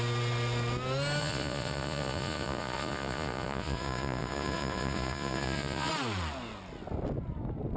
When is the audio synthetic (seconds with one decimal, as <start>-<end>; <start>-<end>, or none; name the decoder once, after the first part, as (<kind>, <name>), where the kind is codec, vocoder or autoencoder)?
1.2-5.9 (vocoder, Vocos)